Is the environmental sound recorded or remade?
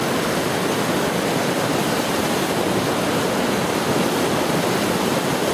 recorded